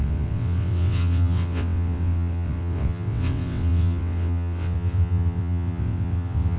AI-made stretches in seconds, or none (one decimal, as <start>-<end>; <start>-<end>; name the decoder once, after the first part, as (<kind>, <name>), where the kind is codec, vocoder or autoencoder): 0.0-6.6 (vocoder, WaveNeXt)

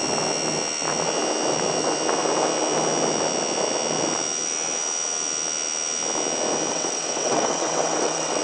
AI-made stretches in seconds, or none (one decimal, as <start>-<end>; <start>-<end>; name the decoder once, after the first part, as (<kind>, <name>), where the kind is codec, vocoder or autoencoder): 6.7-8.4 (vocoder, WaveNeXt)

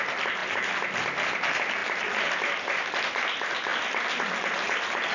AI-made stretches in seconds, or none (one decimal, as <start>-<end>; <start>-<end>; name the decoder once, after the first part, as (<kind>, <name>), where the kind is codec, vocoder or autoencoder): none

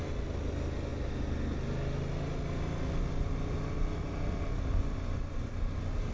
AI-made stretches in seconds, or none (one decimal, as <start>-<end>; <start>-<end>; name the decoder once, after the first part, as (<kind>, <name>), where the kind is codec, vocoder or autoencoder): none

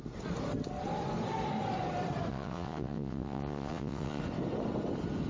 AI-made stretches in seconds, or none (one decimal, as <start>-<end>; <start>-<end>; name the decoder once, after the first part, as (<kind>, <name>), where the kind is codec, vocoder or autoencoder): 2.3-4.2 (vocoder, WaveNeXt)

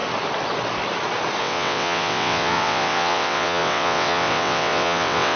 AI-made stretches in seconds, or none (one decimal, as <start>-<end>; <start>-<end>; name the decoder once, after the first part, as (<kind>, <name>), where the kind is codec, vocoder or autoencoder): 1.4-5.4 (vocoder, WaveNeXt)

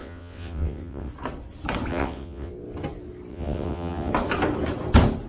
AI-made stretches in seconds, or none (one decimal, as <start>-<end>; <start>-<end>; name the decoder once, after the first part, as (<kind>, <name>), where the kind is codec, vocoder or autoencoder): 0.0-1.1 (vocoder, WaveNeXt); 1.9-2.5; 3.3-4.1

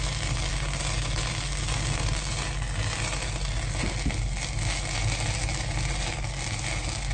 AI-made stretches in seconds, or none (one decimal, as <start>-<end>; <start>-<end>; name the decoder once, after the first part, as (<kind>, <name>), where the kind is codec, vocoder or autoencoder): none